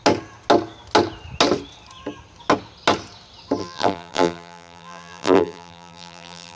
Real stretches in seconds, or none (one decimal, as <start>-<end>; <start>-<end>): 0.0-3.6